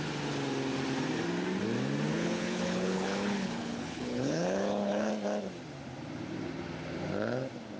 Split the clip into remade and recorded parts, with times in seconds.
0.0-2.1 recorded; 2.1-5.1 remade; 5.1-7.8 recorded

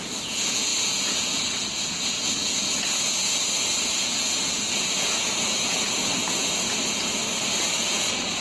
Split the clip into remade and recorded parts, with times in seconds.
0.0-7.2 remade; 7.2-7.8 recorded; 7.8-8.4 remade

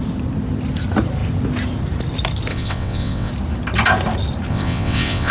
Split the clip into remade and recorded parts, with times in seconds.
0.0-2.5 recorded; 2.5-3.3 remade; 3.3-4.5 recorded; 4.5-5.3 remade

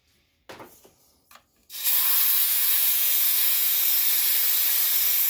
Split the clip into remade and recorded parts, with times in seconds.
0.0-2.4 recorded; 2.4-3.7 remade; 3.7-5.3 recorded